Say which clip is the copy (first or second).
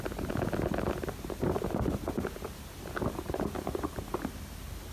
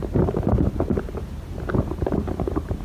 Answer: second